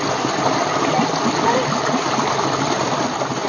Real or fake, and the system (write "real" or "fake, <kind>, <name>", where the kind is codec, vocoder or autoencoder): real